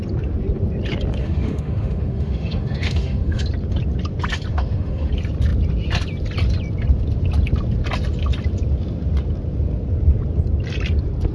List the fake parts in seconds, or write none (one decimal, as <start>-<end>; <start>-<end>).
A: 1.2-3.4; 4.5-5.1